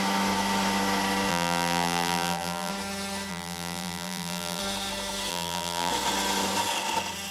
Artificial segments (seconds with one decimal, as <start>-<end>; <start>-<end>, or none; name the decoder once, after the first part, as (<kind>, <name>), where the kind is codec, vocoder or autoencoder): 1.3-2.7 (vocoder, BigVGAN v2); 3.3-4.6; 5.3-5.9